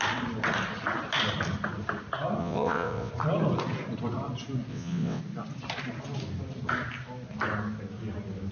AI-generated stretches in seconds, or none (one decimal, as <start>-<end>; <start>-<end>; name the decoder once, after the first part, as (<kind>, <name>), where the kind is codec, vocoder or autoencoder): 2.4-3.1 (vocoder, WaveNeXt); 4.7-5.2